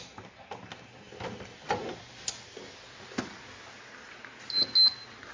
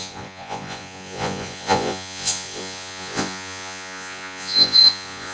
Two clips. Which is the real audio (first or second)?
first